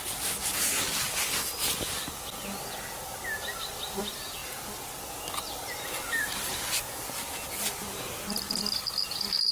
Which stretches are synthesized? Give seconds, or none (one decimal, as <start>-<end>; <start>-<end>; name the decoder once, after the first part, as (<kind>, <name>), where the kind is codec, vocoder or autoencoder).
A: none